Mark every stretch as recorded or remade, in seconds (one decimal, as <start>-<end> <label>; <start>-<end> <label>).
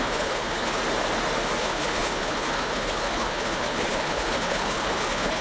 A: 0.0-0.8 remade; 0.8-1.6 recorded; 1.6-5.4 remade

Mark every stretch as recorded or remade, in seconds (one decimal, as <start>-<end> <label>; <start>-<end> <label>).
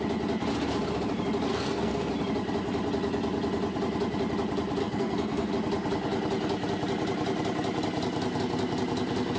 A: 0.0-1.5 recorded; 1.5-2.1 remade; 2.1-4.8 recorded; 4.8-5.5 remade; 5.5-9.4 recorded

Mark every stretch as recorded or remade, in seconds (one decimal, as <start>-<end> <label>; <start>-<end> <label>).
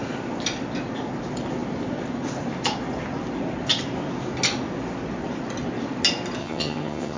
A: 0.0-6.4 recorded; 6.4-7.2 remade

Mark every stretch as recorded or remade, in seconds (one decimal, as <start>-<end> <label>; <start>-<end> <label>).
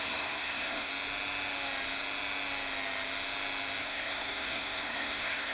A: 0.0-0.9 remade; 0.9-3.8 recorded; 3.8-5.5 remade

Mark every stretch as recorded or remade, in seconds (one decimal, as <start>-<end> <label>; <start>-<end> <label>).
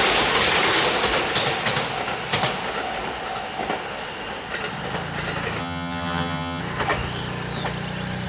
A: 0.0-5.6 recorded; 5.6-6.6 remade; 6.6-8.3 recorded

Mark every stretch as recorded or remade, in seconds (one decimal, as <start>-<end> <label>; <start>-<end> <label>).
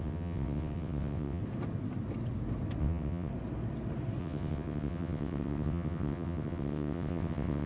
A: 0.0-1.4 remade; 1.4-2.8 recorded; 2.8-3.3 remade; 3.3-4.2 recorded; 4.2-7.7 remade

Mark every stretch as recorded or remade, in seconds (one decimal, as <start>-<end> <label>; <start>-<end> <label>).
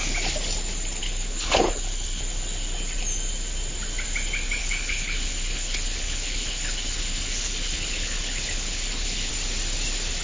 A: 0.0-1.0 recorded; 1.0-2.2 remade; 2.2-4.6 recorded; 4.6-9.3 remade; 9.3-10.2 recorded